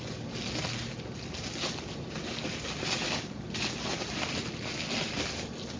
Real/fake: real